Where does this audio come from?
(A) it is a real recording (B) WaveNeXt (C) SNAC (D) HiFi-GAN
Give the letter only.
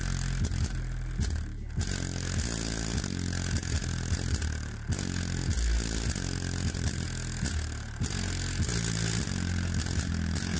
A